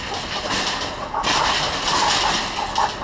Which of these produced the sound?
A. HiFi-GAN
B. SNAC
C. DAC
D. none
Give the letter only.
D